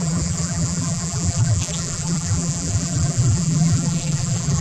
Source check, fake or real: fake